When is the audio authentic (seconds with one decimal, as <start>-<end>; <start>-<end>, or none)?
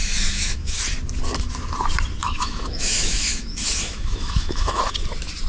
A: 0.8-2.2; 4.8-5.5